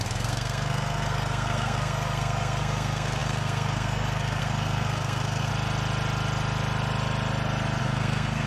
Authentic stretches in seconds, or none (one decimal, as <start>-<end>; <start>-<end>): 5.5-7.8

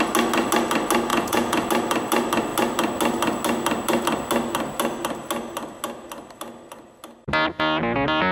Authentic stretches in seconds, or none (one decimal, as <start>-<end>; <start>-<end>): 0.0-1.1; 1.7-8.3

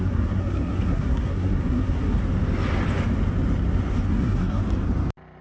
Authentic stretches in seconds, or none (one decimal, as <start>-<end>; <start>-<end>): 2.2-4.1; 4.6-5.4

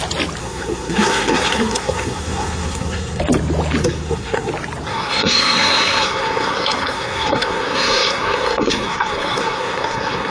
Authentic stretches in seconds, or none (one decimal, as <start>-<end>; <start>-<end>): 0.0-0.4; 3.2-3.8; 4.5-4.9

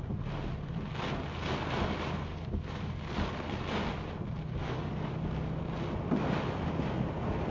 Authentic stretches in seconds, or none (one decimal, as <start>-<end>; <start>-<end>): 0.0-2.3; 2.8-4.6; 5.1-7.5